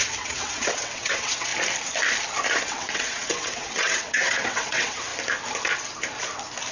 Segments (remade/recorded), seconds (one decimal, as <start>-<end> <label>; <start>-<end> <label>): 0.0-1.5 remade; 1.5-2.6 recorded; 2.6-5.1 remade; 5.1-6.7 recorded

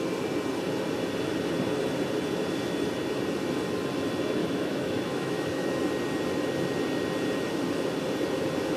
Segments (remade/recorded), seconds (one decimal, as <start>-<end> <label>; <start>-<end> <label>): 0.0-4.4 recorded; 4.4-5.8 remade; 5.8-8.8 recorded

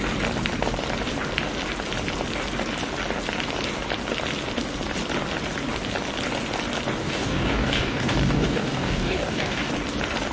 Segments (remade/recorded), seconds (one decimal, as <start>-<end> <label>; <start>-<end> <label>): 0.0-7.0 recorded; 7.0-9.7 remade; 9.7-10.3 recorded

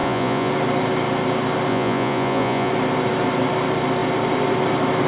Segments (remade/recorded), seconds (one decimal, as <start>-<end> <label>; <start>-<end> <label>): 0.0-0.5 remade; 0.5-1.7 recorded; 1.7-2.7 remade; 2.7-5.1 recorded

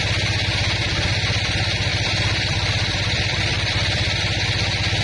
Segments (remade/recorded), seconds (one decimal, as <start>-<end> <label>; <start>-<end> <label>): 0.0-1.9 recorded; 1.9-4.2 remade; 4.2-5.0 recorded

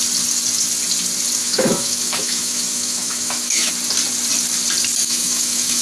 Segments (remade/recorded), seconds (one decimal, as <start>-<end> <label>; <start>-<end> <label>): 0.0-1.4 recorded; 1.4-3.7 remade; 3.7-5.0 recorded; 5.0-5.8 remade

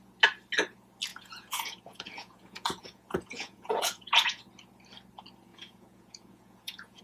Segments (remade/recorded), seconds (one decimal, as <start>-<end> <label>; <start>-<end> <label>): 0.0-1.1 recorded; 1.1-4.4 remade; 4.4-5.5 recorded; 5.5-7.0 remade

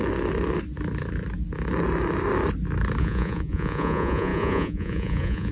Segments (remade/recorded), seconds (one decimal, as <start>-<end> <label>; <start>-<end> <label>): 0.0-3.0 recorded; 3.0-5.5 remade